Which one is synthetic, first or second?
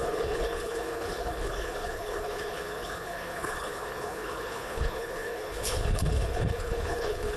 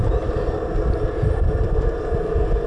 first